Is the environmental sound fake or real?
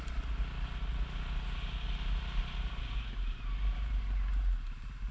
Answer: real